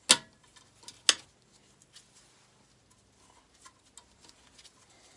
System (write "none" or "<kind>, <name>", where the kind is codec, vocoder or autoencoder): none